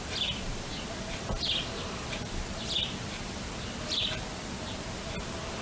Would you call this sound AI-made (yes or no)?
yes